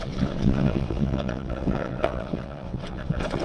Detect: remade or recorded remade